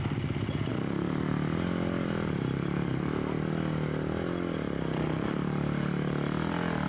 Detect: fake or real real